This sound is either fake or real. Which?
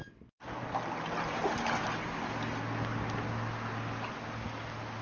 real